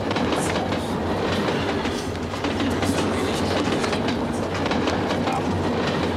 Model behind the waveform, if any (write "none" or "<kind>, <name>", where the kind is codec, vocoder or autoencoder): none